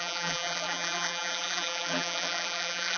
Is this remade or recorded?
remade